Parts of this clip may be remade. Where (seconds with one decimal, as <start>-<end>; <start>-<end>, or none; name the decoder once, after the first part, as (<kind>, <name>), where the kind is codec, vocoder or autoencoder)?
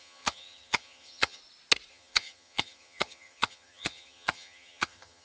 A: 0.0-1.4 (vocoder, HiFi-GAN); 1.9-5.2